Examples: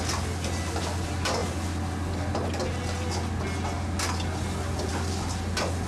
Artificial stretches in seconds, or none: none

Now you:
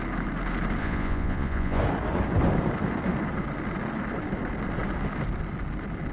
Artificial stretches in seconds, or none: 0.8-1.8 (vocoder, Vocos)

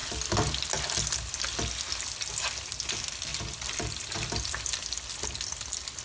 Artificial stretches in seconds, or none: none

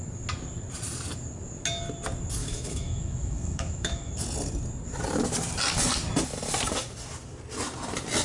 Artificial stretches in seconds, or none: 2.4-4.1 (autoencoder, DAC-VAE)

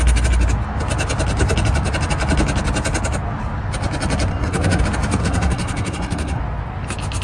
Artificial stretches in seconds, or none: 4.3-4.8 (codec, SNAC); 5.2-6.4

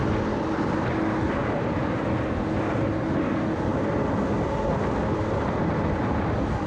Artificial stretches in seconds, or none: none

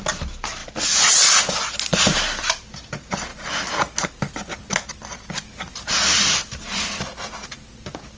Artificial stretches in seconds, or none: none